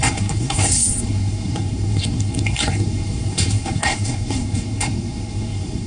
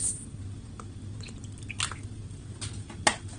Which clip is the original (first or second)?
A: second